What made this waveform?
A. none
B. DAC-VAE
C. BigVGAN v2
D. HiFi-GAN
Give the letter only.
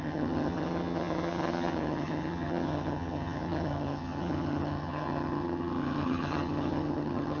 D